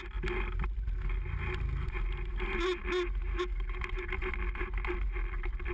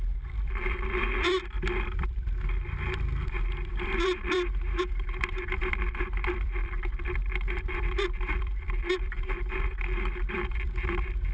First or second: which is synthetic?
second